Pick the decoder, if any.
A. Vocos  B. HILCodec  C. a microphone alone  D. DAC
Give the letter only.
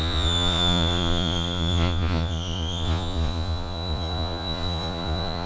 A